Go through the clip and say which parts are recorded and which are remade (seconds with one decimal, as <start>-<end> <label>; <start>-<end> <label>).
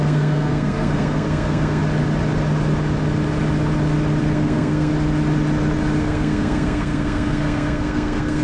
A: 0.0-1.8 remade; 1.8-4.2 recorded; 4.2-4.9 remade; 4.9-6.0 recorded; 6.0-8.4 remade